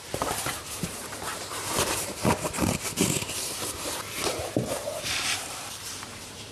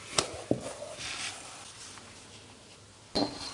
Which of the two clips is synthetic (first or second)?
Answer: first